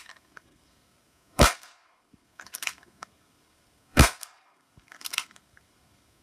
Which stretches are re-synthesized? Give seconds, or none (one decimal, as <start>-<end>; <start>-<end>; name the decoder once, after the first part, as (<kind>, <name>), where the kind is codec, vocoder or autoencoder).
0.0-6.2 (codec, SNAC)